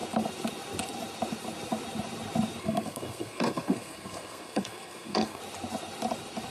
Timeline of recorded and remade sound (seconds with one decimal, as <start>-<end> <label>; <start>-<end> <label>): 0.0-2.6 recorded; 2.6-5.4 remade; 5.4-6.5 recorded